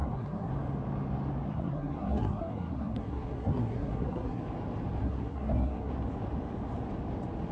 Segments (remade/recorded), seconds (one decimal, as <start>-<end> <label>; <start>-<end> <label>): 0.0-0.5 remade; 0.5-1.5 recorded; 1.5-4.4 remade; 4.4-5.0 recorded; 5.0-5.9 remade; 5.9-7.5 recorded